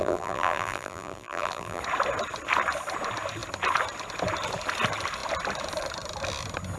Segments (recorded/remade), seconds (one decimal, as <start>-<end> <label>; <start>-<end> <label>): 0.0-1.8 remade; 1.8-6.8 recorded